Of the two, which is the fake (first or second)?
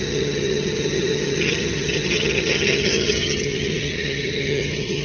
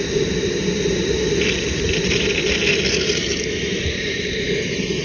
first